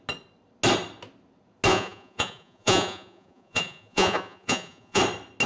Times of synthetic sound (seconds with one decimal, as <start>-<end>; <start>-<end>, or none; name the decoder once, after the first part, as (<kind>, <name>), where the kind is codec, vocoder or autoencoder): 1.7-5.0 (vocoder, Vocos)